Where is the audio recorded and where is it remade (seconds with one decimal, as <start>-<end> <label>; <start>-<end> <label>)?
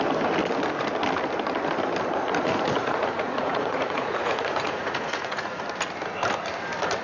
0.0-2.8 recorded; 2.8-5.6 remade; 5.6-7.0 recorded